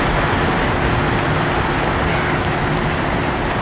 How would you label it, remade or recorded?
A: recorded